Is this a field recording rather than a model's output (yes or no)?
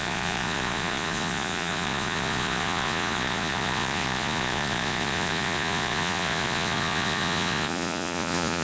no